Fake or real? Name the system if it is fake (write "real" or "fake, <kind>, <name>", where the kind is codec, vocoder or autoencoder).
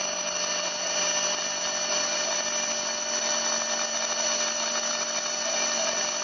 real